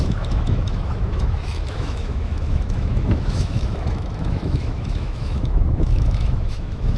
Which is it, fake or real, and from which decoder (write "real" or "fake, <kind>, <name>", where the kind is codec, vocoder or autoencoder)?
fake, autoencoder, DAC-VAE